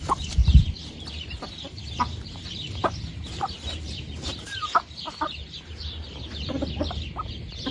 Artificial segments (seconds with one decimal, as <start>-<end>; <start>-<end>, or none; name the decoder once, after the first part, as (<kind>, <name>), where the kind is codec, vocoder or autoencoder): 0.0-7.7 (vocoder, BigVGAN v2)